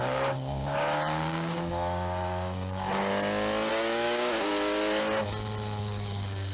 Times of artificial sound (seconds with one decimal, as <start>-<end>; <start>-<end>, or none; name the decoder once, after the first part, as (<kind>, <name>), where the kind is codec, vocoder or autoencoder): 0.0-3.1 (codec, DAC); 3.7-4.5; 5.8-6.5